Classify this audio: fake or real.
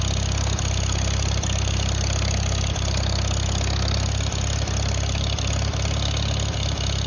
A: real